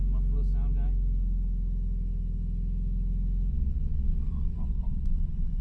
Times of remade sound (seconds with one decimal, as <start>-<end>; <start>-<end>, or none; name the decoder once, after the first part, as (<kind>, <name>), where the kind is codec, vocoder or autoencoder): 3.5-5.6 (vocoder, Vocos)